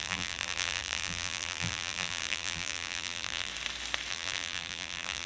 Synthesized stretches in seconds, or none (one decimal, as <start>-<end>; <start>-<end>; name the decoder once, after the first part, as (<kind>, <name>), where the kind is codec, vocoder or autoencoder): 0.0-3.5 (vocoder, BigVGAN v2); 4.1-5.3